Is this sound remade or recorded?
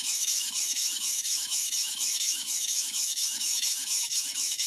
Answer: remade